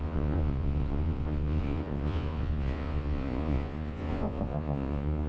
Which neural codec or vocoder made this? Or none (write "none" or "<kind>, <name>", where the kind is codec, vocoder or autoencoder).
vocoder, Vocos